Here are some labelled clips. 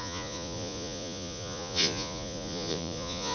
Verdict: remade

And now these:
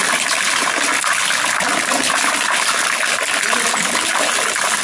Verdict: recorded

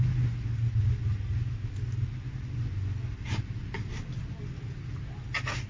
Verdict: recorded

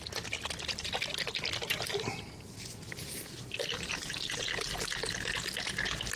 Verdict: recorded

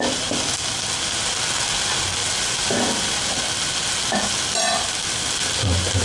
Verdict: recorded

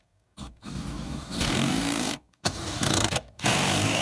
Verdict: remade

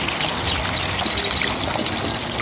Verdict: recorded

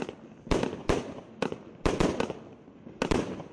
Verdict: recorded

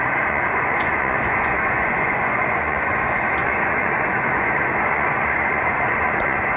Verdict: remade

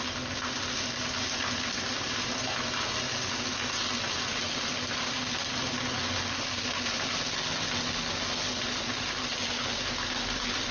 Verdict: recorded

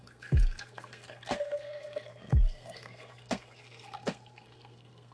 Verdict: remade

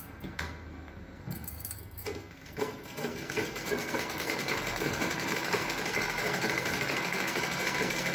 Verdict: remade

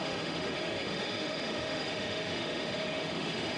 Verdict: remade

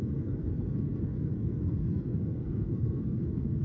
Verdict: remade